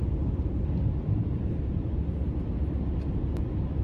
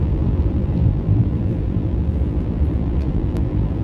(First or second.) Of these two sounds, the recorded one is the first